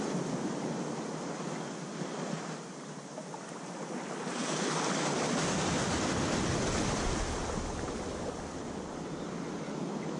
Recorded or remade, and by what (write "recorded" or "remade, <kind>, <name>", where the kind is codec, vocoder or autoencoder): recorded